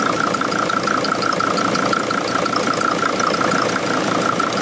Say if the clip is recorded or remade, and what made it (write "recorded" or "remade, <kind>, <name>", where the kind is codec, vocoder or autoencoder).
recorded